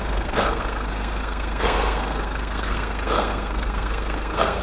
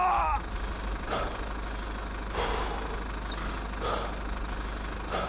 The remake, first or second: first